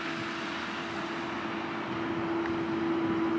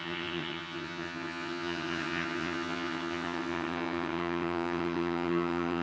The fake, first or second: second